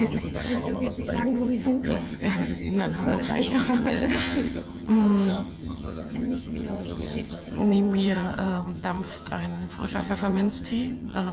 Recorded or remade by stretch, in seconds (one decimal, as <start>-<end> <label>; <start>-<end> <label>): 0.0-11.3 remade